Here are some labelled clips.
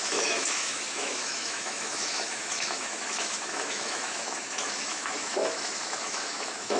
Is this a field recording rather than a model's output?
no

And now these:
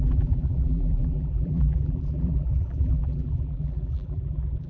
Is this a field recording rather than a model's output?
no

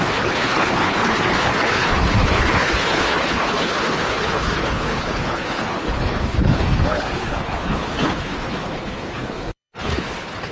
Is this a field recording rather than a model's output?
no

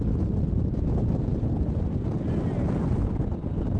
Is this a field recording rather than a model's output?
yes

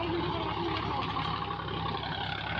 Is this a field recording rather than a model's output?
yes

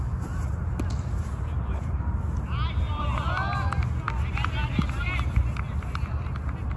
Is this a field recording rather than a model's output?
yes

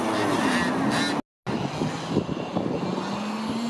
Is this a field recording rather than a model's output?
yes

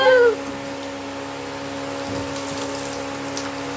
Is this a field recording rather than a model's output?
yes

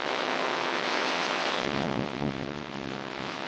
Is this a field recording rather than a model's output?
no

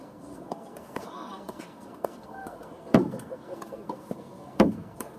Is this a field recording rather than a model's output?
no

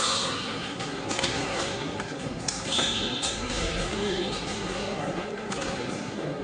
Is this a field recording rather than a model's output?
no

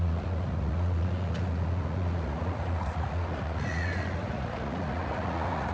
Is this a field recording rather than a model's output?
no